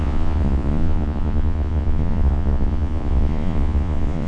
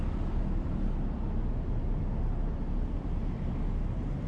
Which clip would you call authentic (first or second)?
second